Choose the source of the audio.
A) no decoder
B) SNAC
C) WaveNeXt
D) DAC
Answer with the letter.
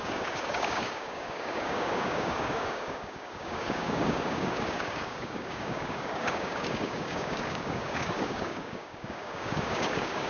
D